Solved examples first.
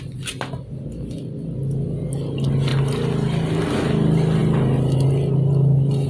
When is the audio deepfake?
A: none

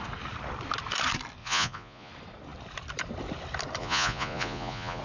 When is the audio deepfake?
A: 1.4-2.1 (vocoder, Vocos); 3.8-5.0

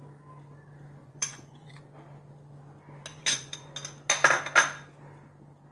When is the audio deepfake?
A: 1.0-1.8 (vocoder, Vocos); 3.1-3.7